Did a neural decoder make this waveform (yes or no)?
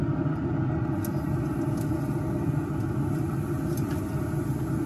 no